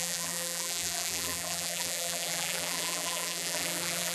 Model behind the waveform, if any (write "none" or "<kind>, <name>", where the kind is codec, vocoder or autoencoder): vocoder, BigVGAN v2